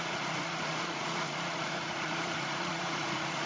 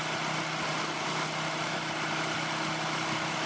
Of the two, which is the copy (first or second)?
first